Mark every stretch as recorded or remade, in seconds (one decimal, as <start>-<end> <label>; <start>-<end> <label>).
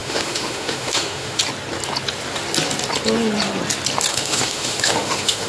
0.0-1.4 remade; 1.4-4.1 recorded; 4.1-5.5 remade